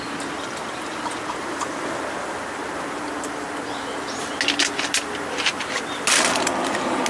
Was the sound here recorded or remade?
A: recorded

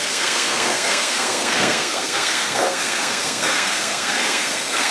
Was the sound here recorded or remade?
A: remade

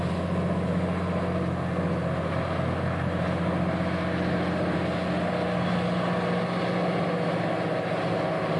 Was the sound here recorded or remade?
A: recorded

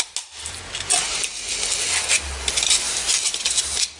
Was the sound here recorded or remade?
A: recorded